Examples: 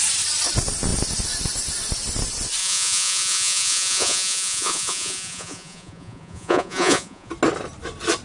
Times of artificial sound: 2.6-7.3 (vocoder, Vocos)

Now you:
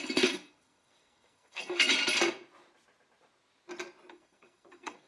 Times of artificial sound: 0.0-1.9 (codec, SNAC); 4.1-5.1

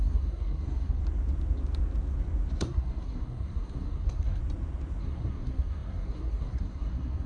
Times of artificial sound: 0.0-1.0 (codec, SNAC); 2.6-4.4; 5.0-7.3

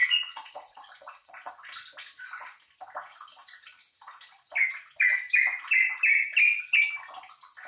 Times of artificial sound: 0.0-1.5 (vocoder, Vocos)

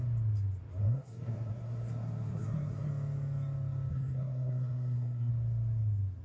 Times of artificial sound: 0.8-2.9 (codec, SNAC); 3.9-5.3